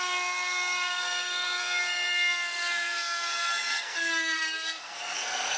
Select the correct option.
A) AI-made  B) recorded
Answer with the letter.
A